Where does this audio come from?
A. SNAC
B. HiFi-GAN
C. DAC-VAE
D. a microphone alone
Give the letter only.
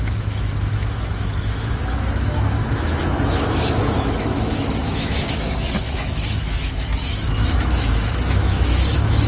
C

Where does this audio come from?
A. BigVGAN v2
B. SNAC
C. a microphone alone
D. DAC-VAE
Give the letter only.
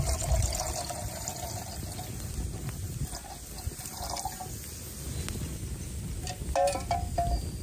C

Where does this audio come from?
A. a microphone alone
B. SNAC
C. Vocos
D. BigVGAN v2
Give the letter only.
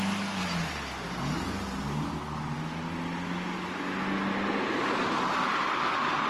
A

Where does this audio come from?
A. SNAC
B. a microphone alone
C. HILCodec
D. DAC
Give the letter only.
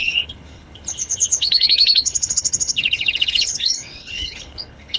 C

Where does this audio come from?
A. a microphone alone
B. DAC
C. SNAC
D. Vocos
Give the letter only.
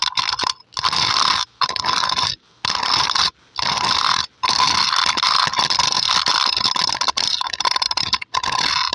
A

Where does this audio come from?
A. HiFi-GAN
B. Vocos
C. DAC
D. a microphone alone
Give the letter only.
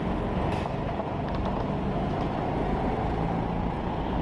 D